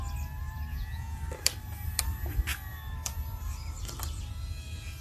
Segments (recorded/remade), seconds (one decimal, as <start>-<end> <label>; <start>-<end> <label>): 0.0-0.7 recorded; 0.7-1.2 remade; 1.2-5.0 recorded